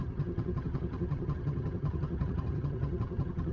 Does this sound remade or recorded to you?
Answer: remade